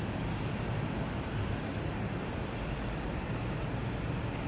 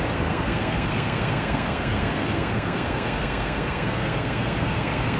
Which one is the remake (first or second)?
second